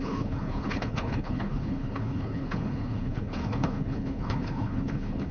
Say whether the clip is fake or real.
fake